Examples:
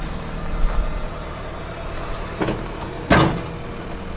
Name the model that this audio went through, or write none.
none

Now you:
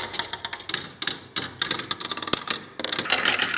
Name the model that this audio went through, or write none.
none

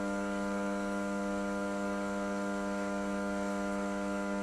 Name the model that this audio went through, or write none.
codec, DAC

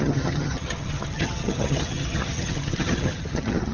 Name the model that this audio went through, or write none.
vocoder, HiFi-GAN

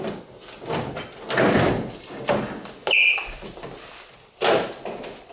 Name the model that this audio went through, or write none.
none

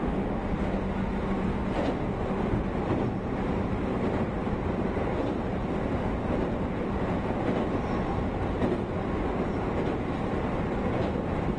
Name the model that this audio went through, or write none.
none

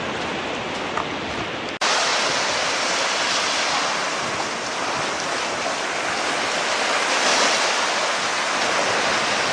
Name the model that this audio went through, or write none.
none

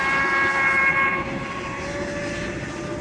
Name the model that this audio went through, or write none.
none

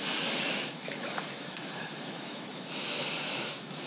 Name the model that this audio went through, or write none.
autoencoder, DAC-VAE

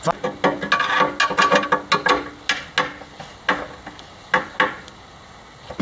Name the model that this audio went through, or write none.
none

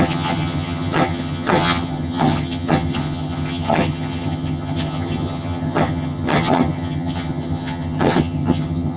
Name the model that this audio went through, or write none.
vocoder, HiFi-GAN